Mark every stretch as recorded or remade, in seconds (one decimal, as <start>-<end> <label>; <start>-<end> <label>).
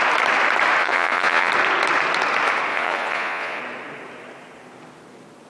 0.0-0.8 recorded; 0.8-1.5 remade; 1.5-2.7 recorded; 2.7-3.6 remade; 3.6-5.5 recorded